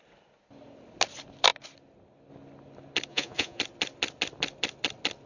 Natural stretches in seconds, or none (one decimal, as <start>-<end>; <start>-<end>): 0.0-3.1; 3.6-5.3